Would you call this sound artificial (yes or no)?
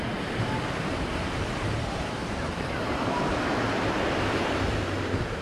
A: yes